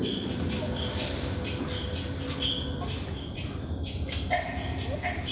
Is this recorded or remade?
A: recorded